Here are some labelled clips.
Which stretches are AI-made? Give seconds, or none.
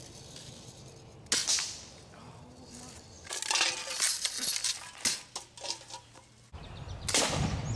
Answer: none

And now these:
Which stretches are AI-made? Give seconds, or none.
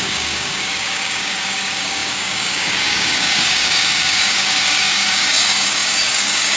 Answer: 0.0-6.6 (codec, DAC)